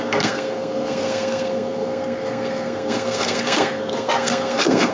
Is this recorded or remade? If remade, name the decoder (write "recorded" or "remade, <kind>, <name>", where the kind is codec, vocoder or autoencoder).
remade, codec, SNAC